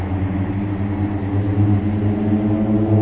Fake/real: real